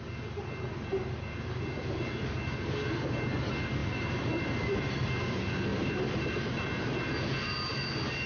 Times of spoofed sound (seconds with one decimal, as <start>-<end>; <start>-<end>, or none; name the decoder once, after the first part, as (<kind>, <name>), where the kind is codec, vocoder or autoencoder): 3.8-5.1 (vocoder, BigVGAN v2); 5.7-6.4